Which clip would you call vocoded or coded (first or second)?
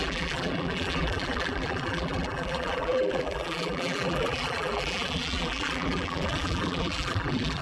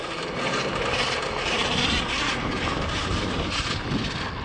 first